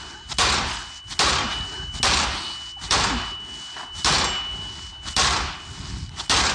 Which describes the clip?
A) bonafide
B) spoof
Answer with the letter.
A